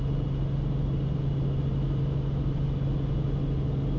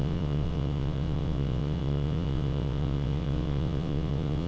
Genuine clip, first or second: first